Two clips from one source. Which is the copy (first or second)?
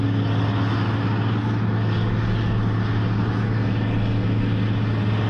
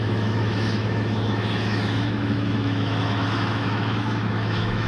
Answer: second